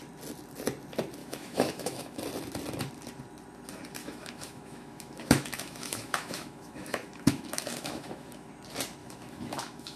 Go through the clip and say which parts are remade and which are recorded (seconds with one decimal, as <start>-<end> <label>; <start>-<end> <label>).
0.0-1.2 recorded; 1.2-2.2 remade; 2.2-4.0 recorded; 4.0-8.5 remade; 8.5-9.0 recorded; 9.0-10.0 remade